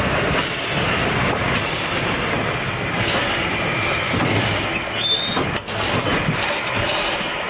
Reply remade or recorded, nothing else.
recorded